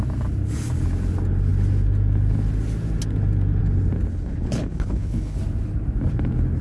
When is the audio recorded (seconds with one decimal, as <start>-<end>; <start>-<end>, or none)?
0.0-4.1; 5.4-6.6